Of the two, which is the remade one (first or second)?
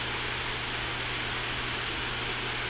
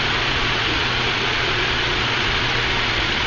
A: second